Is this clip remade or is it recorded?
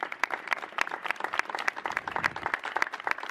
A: recorded